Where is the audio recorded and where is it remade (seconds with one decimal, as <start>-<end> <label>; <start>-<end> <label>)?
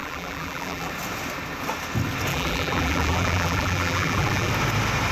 0.0-0.9 remade; 0.9-2.3 recorded; 2.3-4.5 remade; 4.5-5.1 recorded